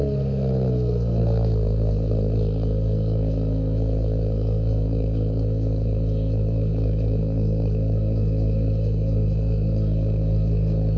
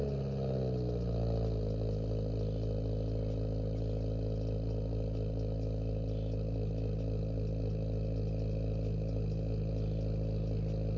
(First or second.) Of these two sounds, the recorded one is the second